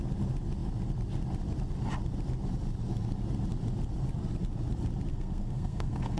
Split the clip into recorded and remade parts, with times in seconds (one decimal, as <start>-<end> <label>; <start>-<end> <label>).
0.0-5.1 recorded; 5.1-6.2 remade